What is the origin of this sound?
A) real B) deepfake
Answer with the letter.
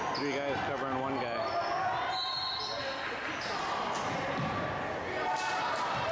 A